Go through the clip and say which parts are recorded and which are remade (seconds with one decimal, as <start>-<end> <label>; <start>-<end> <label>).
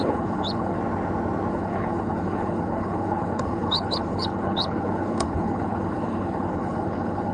0.0-0.8 remade; 0.8-1.5 recorded; 1.5-7.3 remade